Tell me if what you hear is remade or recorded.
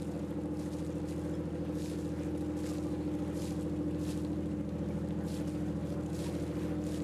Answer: recorded